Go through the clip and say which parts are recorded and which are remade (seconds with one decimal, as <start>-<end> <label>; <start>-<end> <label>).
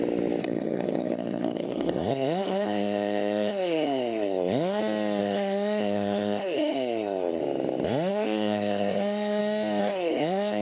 0.0-0.4 recorded; 0.4-4.8 remade; 4.8-5.2 recorded; 5.2-7.4 remade; 7.4-8.1 recorded; 8.1-9.4 remade; 9.4-9.8 recorded; 9.8-10.6 remade